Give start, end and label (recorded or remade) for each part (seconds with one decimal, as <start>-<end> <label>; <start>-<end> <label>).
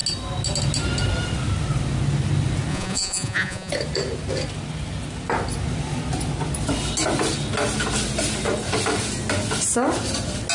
0.0-2.7 recorded; 2.7-3.7 remade; 3.7-10.5 recorded